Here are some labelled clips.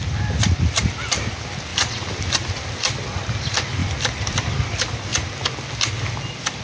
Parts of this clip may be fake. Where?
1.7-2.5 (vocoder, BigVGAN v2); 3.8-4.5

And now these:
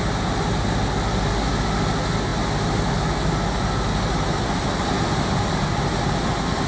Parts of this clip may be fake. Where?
none

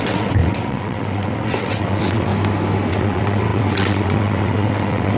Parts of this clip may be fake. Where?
0.0-2.3 (vocoder, WaveNeXt); 2.9-5.2

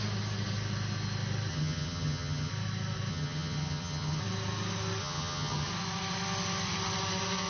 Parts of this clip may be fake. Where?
1.5-2.5 (vocoder, HiFi-GAN); 3.1-4.2; 5.0-5.7